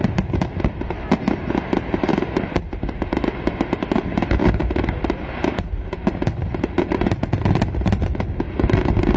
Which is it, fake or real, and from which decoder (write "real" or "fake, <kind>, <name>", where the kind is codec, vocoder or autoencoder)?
real